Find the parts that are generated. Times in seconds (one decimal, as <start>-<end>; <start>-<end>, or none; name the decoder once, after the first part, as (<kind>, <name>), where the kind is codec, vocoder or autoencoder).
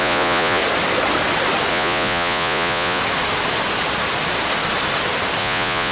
0.0-0.6 (vocoder, Vocos); 1.7-3.0; 5.4-5.9